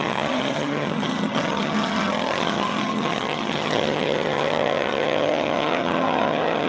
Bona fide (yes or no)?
no